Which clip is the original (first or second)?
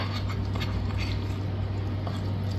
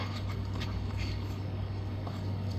first